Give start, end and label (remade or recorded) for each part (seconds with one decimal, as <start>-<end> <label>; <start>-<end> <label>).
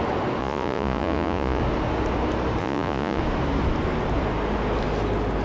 0.0-0.4 recorded; 0.4-1.6 remade; 1.6-2.6 recorded; 2.6-3.2 remade; 3.2-5.4 recorded